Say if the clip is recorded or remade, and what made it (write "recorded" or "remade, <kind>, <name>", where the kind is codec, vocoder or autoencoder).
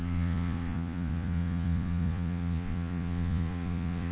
remade, vocoder, Vocos